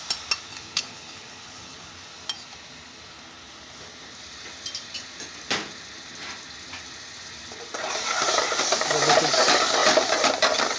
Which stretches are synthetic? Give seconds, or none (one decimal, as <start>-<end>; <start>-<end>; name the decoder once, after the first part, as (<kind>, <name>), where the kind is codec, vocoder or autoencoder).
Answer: 0.5-1.9 (codec, HILCodec)